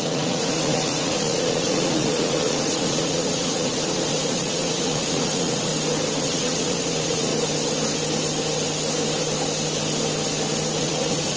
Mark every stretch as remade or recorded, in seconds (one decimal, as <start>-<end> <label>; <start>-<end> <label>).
0.0-5.7 remade; 5.7-6.2 recorded; 6.2-7.3 remade; 7.3-10.8 recorded; 10.8-11.4 remade